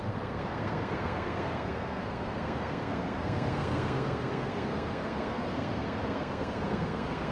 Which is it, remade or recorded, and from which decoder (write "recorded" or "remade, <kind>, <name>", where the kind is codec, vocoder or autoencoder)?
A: remade, codec, SNAC